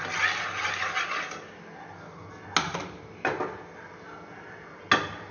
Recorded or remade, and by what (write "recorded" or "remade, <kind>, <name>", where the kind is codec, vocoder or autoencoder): recorded